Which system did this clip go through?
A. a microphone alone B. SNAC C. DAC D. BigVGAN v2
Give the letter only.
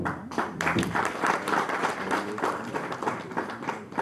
D